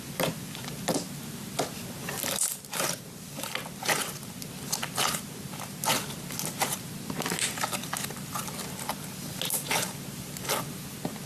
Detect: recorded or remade recorded